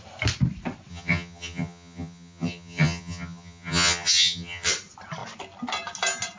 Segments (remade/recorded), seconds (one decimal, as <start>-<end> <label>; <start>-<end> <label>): 0.0-0.9 recorded; 0.9-4.7 remade; 4.7-6.4 recorded